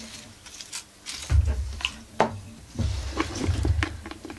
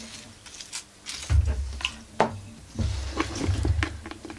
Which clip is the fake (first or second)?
first